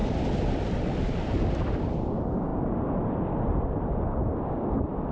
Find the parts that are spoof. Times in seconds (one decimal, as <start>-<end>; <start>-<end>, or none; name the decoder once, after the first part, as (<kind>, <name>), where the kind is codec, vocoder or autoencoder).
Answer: none